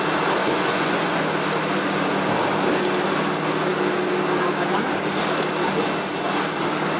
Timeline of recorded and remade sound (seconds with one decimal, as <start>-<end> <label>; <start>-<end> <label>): 0.0-0.4 recorded; 0.4-1.2 remade; 1.2-7.0 recorded

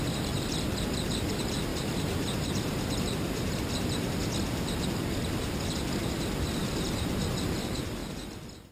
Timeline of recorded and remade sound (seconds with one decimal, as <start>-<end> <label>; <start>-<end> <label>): 0.0-1.7 recorded; 1.7-4.1 remade; 4.1-8.7 recorded

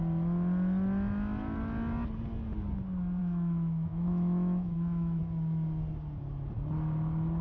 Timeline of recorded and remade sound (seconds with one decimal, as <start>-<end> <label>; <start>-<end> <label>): 0.0-3.2 recorded; 3.2-5.2 remade; 5.2-7.4 recorded

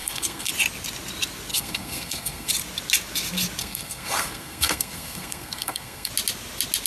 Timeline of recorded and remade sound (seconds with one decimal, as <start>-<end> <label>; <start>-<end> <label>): 0.0-0.5 remade; 0.5-1.5 recorded; 1.5-2.5 remade; 2.5-3.6 recorded; 3.6-6.1 remade; 6.1-6.9 recorded

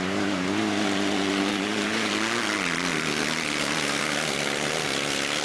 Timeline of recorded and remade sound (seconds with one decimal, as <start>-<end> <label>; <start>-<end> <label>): 0.0-1.5 recorded; 1.5-2.1 remade; 2.1-5.4 recorded

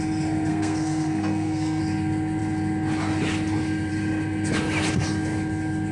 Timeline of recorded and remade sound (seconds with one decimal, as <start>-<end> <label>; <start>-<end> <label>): 0.0-0.5 recorded; 0.5-1.8 remade; 1.8-5.9 recorded